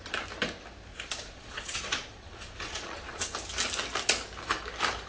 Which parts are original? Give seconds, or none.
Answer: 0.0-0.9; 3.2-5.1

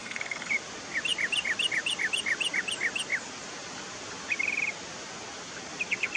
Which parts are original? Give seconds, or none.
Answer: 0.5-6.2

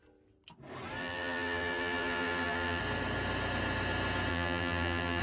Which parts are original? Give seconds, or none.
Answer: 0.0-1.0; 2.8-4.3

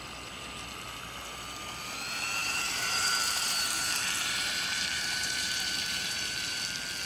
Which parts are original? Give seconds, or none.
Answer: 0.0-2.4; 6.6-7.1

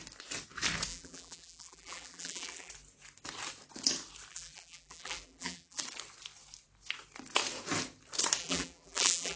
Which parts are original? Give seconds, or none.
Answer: 0.0-0.9; 2.7-4.3; 5.8-8.4